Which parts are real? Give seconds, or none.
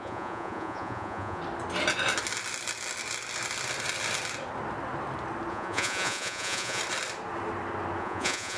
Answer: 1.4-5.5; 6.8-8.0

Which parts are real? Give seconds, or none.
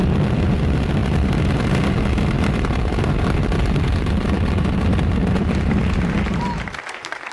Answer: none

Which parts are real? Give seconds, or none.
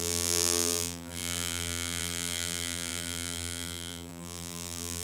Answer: none